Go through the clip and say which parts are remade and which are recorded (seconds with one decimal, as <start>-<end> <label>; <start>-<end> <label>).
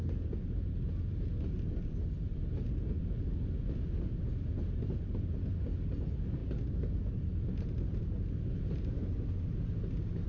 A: 0.0-2.3 recorded; 2.3-3.0 remade; 3.0-6.4 recorded; 6.4-8.0 remade; 8.0-10.3 recorded